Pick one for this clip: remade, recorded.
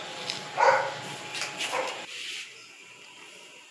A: recorded